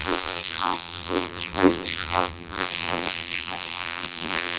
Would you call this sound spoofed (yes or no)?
yes